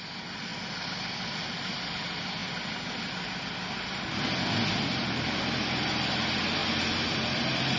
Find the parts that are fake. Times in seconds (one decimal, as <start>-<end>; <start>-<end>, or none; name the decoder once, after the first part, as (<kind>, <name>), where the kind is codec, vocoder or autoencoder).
none